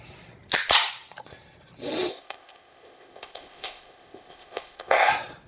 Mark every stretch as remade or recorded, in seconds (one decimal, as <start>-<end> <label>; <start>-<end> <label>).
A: 0.0-2.1 recorded; 2.1-5.1 remade; 5.1-5.5 recorded